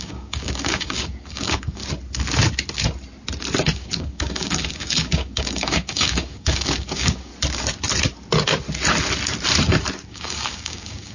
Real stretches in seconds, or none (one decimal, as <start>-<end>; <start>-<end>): 1.8-3.7; 7.3-10.1